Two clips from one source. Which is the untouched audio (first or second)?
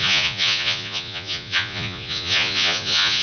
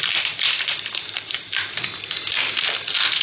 second